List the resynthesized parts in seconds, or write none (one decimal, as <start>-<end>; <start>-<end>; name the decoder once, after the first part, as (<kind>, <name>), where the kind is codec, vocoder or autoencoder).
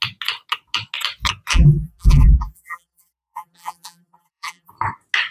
1.5-4.7 (vocoder, BigVGAN v2)